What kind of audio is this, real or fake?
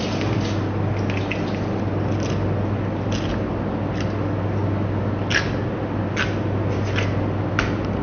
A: real